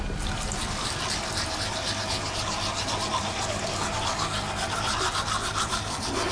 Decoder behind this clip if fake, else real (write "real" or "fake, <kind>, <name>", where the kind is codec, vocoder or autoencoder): real